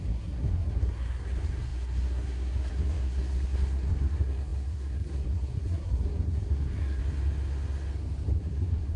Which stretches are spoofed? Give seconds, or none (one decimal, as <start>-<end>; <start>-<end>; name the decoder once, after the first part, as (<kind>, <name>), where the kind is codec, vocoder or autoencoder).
0.0-7.0 (codec, SNAC); 8.4-9.0